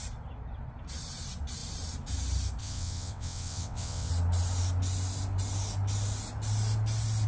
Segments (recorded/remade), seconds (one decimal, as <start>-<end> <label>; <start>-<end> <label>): 0.0-2.6 recorded; 2.6-4.1 remade; 4.1-7.3 recorded